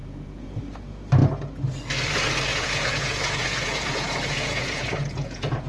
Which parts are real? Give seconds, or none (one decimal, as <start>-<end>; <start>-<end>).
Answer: 0.6-2.5